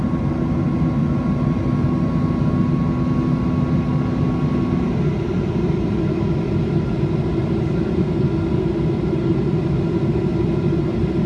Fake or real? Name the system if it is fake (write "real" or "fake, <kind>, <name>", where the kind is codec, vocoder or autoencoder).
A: real